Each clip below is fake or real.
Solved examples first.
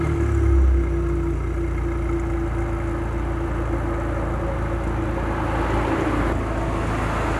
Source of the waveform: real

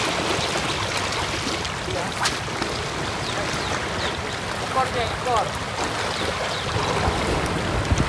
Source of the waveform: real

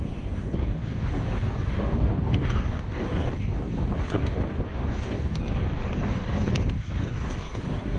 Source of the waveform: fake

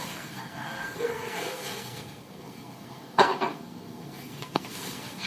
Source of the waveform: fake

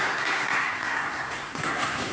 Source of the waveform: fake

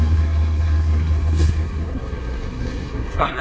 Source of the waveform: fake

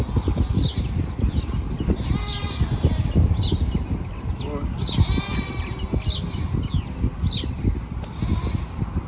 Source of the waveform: real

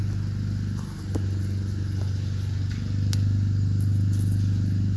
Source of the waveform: real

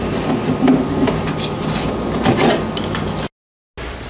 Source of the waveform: real